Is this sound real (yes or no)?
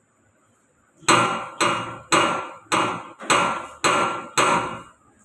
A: yes